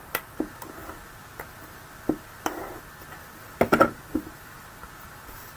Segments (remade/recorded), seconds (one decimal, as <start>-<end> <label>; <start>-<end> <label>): 0.0-5.6 recorded